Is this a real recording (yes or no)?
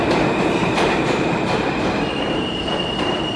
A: no